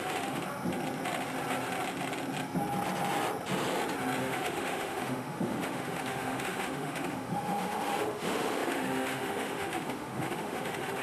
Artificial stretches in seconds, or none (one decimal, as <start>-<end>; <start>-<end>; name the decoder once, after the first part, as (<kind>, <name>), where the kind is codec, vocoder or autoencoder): 0.0-0.4 (autoencoder, DAC-VAE); 4.2-11.0